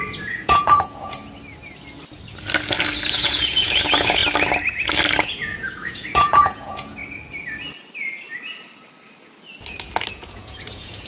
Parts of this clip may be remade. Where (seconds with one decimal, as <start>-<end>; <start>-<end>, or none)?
0.0-1.2; 3.1-4.2; 5.2-7.0; 10.1-11.1